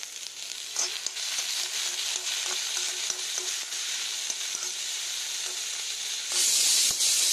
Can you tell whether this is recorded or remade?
recorded